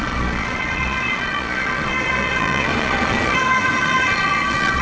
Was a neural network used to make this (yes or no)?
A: yes